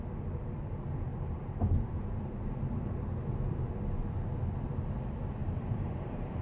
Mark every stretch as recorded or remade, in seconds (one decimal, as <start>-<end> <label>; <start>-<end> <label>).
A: 0.0-1.1 recorded; 1.1-2.5 remade; 2.5-5.4 recorded; 5.4-6.4 remade